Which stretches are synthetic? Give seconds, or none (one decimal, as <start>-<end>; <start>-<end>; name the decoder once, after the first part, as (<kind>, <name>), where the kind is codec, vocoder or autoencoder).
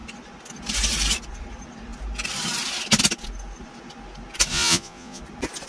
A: 4.5-5.2 (vocoder, Vocos)